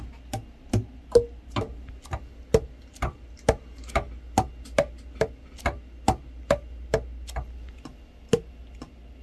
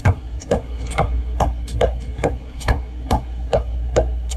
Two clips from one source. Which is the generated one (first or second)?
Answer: second